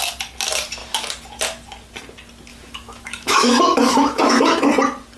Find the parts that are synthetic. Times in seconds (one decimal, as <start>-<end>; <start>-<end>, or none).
2.5-4.7